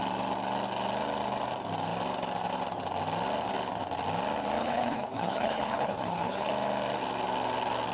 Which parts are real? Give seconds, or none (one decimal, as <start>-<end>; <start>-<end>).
0.0-4.6; 6.5-7.9